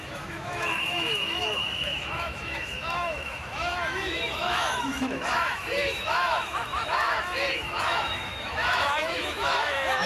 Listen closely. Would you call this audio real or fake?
fake